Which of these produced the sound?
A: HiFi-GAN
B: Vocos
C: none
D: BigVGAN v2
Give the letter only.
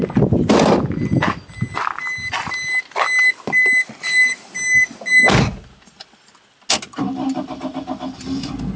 C